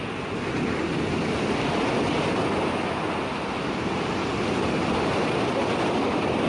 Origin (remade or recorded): recorded